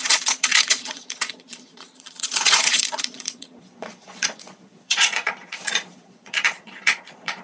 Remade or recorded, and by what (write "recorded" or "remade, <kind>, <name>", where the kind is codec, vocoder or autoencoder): remade, vocoder, Vocos